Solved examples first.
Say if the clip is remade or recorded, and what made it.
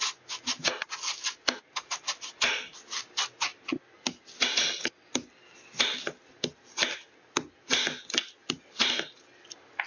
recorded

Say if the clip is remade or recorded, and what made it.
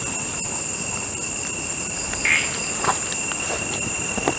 recorded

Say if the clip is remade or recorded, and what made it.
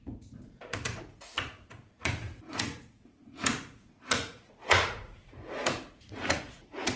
remade, vocoder, Vocos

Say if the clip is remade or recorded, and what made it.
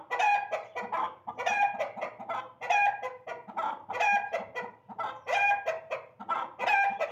recorded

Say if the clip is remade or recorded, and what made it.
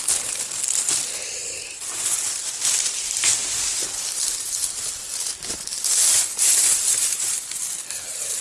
recorded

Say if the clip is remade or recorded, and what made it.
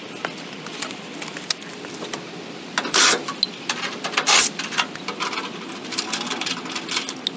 recorded